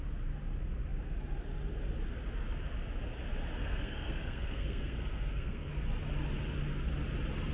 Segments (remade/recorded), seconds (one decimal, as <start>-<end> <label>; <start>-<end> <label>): 0.0-3.6 recorded; 3.6-5.7 remade; 5.7-7.5 recorded